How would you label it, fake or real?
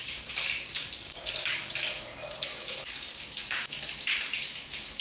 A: fake